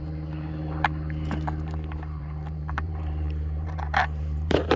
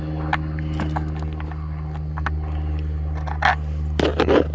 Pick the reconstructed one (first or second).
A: first